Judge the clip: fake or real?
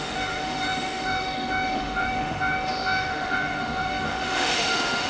fake